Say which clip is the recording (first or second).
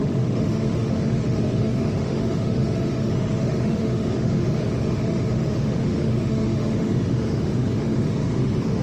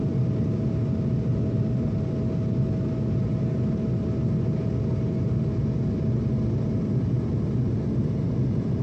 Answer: second